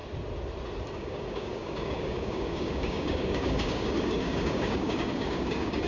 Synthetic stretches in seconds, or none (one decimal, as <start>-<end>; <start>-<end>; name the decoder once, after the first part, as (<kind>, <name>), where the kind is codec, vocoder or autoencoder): 0.9-5.9 (codec, DAC)